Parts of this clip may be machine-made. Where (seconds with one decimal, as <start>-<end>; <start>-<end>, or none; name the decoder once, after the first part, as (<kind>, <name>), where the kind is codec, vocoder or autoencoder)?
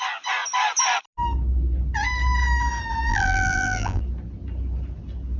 3.1-4.0 (vocoder, BigVGAN v2)